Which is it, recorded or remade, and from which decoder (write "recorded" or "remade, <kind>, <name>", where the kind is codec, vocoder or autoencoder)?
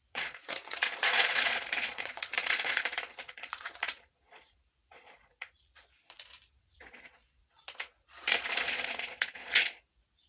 remade, vocoder, Vocos